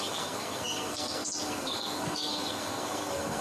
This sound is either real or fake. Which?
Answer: fake